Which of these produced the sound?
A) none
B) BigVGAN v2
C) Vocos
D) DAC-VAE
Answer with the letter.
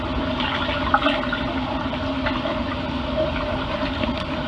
A